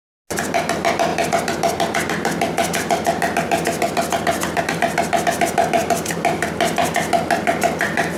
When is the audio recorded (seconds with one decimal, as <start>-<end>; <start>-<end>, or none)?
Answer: 0.0-8.2